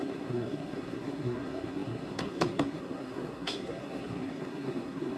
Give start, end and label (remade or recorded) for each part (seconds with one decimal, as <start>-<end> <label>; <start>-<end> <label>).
0.0-5.2 remade